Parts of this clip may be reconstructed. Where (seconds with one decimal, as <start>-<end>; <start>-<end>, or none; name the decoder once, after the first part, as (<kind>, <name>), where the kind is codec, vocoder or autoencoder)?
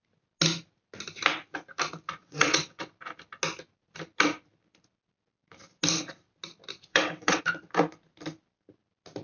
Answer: 2.2-2.9 (vocoder, WaveNeXt); 6.9-7.4